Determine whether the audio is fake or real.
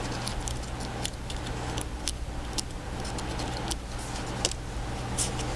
real